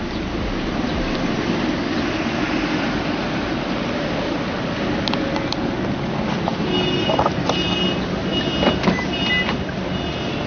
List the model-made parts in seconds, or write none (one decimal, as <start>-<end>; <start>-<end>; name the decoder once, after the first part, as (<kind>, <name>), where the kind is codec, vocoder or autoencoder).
none